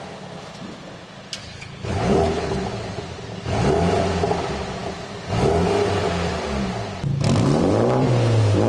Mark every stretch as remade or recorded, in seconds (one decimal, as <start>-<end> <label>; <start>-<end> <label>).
0.0-1.4 recorded; 1.4-2.6 remade; 2.6-8.7 recorded